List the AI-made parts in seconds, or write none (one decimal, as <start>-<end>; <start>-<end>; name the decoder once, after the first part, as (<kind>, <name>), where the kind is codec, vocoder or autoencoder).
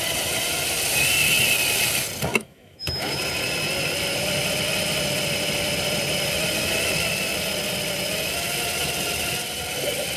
2.3-3.2 (autoencoder, DAC-VAE)